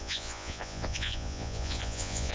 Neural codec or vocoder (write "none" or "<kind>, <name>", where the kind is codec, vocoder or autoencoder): vocoder, Vocos